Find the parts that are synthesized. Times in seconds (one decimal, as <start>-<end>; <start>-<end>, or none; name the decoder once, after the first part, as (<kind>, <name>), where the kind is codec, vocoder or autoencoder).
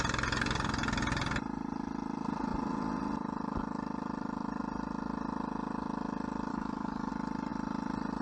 6.5-7.1 (codec, DAC)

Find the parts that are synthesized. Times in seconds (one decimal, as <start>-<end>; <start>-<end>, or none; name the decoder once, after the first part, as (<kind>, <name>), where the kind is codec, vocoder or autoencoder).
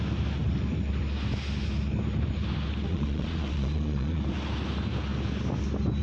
2.9-4.2 (vocoder, Vocos)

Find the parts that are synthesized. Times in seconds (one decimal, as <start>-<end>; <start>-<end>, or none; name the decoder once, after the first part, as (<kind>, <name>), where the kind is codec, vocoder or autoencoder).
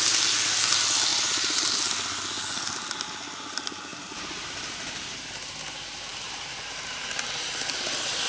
1.1-1.7 (vocoder, BigVGAN v2); 3.9-5.3; 6.1-8.3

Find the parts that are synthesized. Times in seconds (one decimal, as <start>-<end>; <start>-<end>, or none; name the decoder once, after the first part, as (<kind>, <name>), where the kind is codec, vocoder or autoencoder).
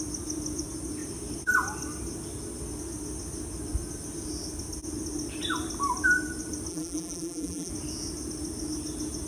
6.7-7.7 (vocoder, BigVGAN v2)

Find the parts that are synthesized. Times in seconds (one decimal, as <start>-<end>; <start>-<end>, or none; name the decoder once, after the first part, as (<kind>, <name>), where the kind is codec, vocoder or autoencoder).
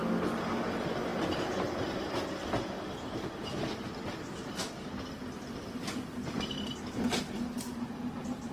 5.6-7.2 (vocoder, BigVGAN v2)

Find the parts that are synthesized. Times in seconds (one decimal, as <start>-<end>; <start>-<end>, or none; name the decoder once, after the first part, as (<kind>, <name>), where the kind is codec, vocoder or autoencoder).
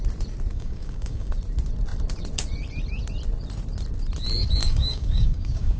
0.5-1.3 (codec, DAC); 4.6-5.8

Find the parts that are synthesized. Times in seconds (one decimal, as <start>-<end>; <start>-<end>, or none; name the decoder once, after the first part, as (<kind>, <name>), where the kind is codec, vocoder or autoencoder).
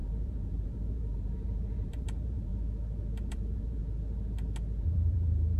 0.0-2.5 (vocoder, BigVGAN v2); 3.3-3.8; 4.8-5.6